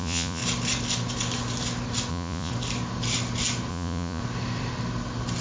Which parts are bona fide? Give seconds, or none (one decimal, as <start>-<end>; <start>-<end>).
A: 0.4-2.1; 2.5-3.7; 4.2-5.4